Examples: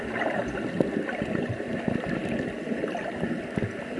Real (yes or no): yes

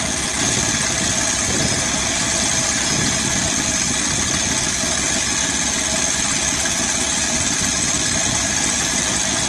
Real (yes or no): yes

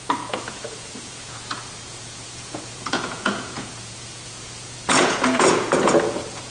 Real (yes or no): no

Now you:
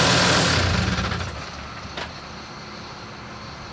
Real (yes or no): yes